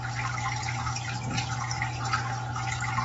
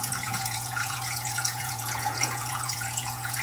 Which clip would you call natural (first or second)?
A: first